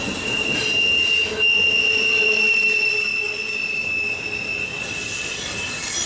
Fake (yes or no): no